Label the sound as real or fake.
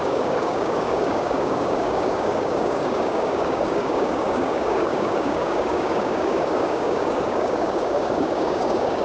fake